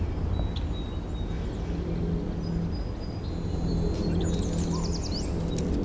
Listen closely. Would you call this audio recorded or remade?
recorded